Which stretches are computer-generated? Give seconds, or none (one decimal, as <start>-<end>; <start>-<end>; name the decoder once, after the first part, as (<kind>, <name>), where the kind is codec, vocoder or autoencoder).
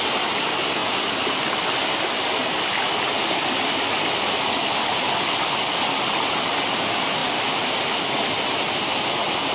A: none